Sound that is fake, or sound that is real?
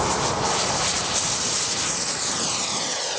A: real